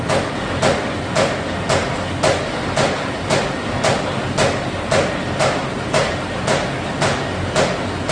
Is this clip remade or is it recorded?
recorded